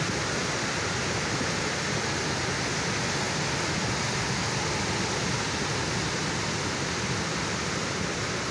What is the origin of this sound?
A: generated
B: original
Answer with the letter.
B